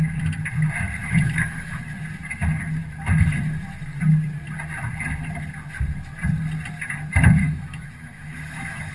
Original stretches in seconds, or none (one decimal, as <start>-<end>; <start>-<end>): 0.0-1.0; 1.8-7.4